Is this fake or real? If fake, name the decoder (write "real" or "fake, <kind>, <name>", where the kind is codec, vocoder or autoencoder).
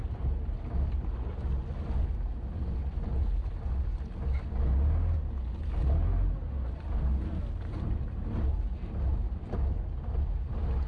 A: real